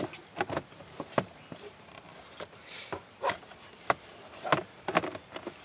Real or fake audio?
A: real